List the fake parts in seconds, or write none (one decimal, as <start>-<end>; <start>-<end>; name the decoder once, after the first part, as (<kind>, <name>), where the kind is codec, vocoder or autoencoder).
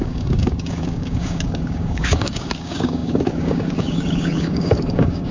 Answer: 0.0-5.3 (codec, DAC)